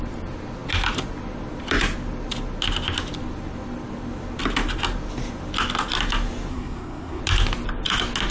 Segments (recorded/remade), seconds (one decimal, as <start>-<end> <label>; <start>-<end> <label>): 0.0-6.5 recorded; 6.5-7.2 remade; 7.2-8.3 recorded